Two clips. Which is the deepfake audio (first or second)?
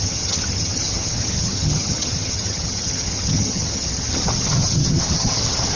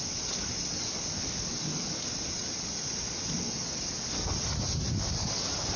first